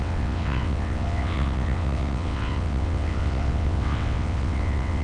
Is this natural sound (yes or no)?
no